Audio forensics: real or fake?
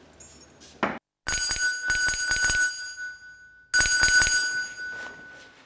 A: real